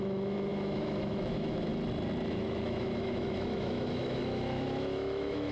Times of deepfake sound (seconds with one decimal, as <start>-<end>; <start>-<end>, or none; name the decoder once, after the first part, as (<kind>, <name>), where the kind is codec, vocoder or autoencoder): 0.0-1.7 (autoencoder, DAC-VAE); 2.3-5.5

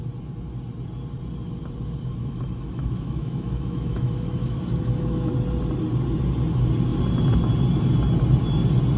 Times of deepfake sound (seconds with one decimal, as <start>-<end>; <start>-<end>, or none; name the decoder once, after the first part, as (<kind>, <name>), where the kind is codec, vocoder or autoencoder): 2.2-5.3 (autoencoder, DAC-VAE)

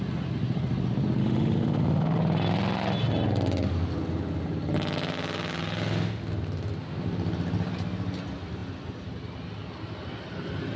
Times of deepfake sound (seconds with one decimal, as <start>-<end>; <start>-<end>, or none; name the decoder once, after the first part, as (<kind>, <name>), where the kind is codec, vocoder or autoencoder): 1.2-2.2 (autoencoder, DAC-VAE)

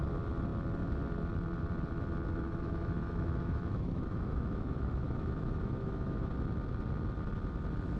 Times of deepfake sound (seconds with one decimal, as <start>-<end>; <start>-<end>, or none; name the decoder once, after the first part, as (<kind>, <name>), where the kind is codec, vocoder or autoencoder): 2.3-6.3 (autoencoder, DAC-VAE)

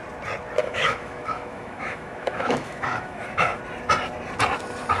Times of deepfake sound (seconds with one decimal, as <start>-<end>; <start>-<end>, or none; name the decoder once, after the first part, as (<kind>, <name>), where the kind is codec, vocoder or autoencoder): 0.6-3.6 (autoencoder, DAC-VAE)

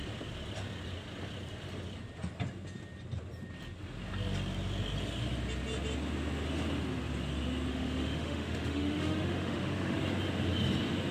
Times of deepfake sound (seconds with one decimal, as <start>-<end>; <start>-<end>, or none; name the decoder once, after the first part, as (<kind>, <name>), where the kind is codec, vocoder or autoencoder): 7.7-10.0 (autoencoder, DAC-VAE)

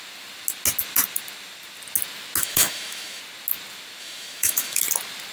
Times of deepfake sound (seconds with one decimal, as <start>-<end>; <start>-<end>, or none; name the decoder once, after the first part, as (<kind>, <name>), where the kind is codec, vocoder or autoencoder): 2.4-3.2 (autoencoder, DAC-VAE); 4.0-4.8